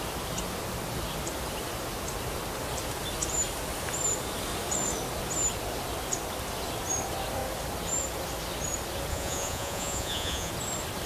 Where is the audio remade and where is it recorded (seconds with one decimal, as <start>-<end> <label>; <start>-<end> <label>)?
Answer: 0.0-9.1 recorded; 9.1-10.5 remade; 10.5-11.1 recorded